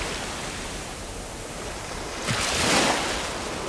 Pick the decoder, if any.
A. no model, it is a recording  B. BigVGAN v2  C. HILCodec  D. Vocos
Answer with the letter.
A